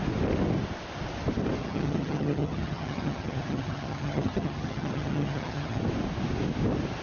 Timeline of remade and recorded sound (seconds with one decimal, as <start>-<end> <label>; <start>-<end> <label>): 0.0-1.6 recorded; 1.6-5.8 remade; 5.8-7.0 recorded